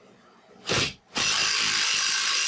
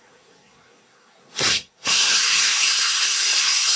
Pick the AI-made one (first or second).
second